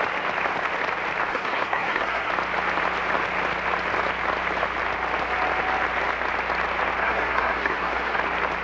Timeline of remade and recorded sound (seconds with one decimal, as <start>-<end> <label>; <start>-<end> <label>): 0.0-1.3 recorded; 1.3-2.3 remade; 2.3-7.0 recorded; 7.0-8.2 remade; 8.2-8.6 recorded